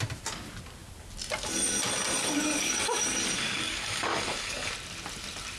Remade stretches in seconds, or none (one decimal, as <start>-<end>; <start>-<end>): 2.2-4.7